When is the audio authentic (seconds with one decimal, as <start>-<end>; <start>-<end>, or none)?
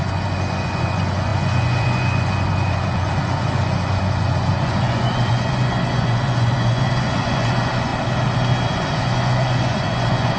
7.9-8.7